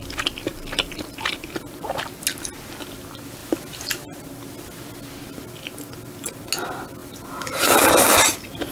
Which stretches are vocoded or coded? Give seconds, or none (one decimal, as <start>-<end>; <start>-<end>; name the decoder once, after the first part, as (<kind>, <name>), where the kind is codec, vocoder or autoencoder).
0.5-2.0 (vocoder, BigVGAN v2); 7.0-8.1